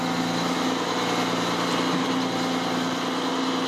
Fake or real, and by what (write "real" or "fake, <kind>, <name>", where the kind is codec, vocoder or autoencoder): real